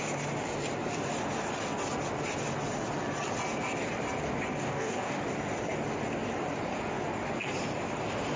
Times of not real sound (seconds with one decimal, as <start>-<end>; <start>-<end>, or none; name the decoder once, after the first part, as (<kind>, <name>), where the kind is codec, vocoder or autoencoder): 4.6-5.2 (codec, DAC)